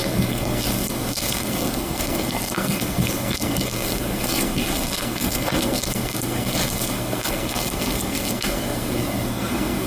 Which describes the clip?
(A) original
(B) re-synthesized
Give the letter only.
B